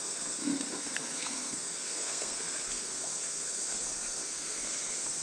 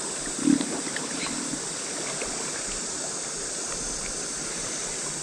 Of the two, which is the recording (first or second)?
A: second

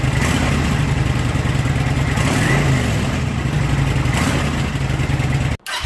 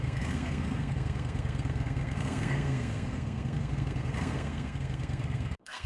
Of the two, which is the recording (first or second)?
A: first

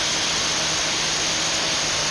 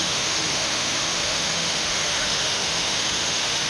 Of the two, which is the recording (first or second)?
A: first